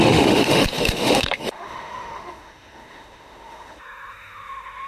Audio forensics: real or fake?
fake